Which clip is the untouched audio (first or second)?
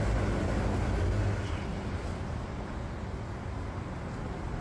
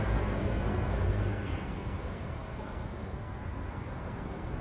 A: first